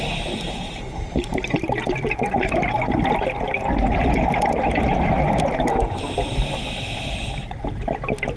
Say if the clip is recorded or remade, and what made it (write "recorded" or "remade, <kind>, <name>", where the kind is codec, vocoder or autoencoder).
recorded